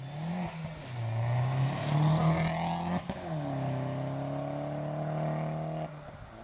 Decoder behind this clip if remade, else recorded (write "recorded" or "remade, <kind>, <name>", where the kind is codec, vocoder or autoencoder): recorded